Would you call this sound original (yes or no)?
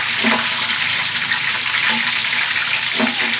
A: yes